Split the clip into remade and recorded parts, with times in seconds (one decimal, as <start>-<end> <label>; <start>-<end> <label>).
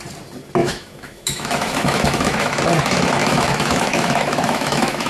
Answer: 0.0-0.6 recorded; 0.6-2.6 remade; 2.6-3.2 recorded; 3.2-5.1 remade